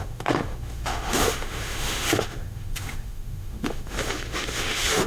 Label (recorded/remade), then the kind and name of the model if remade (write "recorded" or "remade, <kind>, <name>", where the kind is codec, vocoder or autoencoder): remade, autoencoder, DAC-VAE